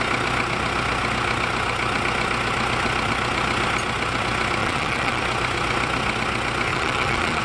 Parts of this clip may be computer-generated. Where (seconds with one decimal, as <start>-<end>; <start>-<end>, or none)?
4.6-5.2; 6.7-7.4